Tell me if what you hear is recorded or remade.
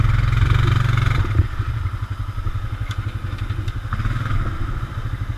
recorded